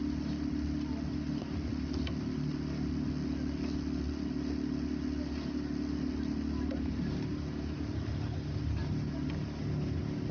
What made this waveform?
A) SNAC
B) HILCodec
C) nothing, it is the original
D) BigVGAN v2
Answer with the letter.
C